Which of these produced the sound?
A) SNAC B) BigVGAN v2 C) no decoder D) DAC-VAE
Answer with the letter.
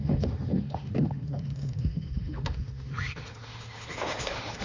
D